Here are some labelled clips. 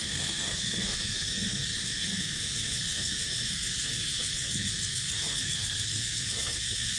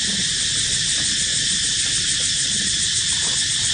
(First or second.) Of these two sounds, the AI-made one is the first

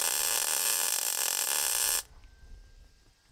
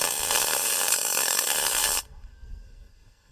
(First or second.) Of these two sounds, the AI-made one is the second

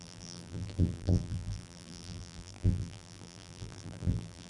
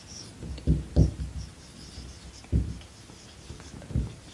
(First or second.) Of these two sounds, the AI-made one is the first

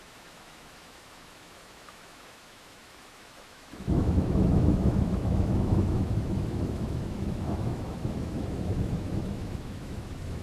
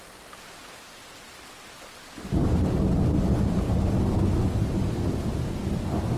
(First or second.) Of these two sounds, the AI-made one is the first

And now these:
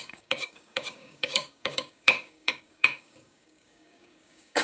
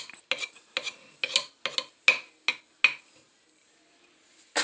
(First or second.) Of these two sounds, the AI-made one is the first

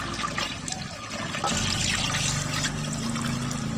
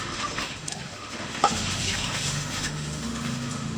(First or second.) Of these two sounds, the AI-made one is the second